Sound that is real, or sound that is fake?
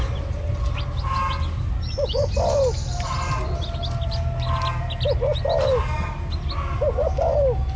real